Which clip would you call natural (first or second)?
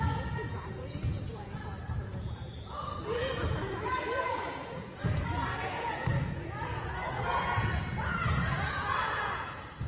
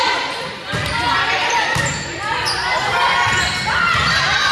second